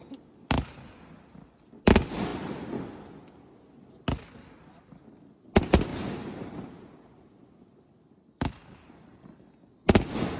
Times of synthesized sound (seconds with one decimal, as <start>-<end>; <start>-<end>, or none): none